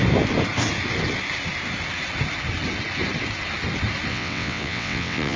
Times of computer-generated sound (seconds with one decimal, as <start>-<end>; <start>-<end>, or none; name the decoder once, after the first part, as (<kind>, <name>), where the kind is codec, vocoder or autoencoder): 4.1-5.4 (vocoder, WaveNeXt)